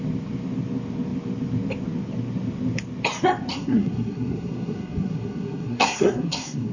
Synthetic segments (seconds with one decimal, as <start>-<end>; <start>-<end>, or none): 3.5-6.7

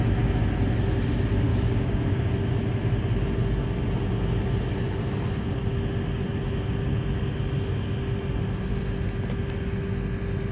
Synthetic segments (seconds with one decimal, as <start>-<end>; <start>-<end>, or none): 1.5-2.3

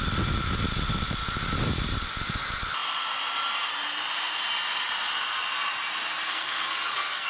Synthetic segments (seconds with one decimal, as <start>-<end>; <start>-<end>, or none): 6.3-7.3

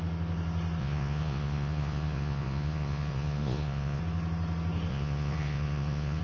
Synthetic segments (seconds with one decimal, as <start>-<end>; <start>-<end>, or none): 0.8-4.0; 4.9-6.2

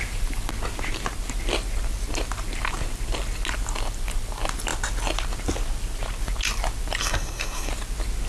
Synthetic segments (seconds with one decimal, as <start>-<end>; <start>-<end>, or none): 7.0-7.7

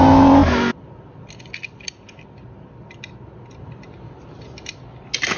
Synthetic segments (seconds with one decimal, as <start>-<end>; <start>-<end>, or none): none

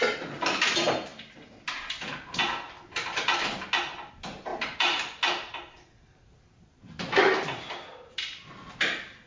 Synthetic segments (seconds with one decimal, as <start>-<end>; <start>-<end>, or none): none